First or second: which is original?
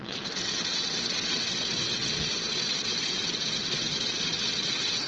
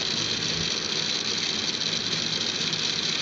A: second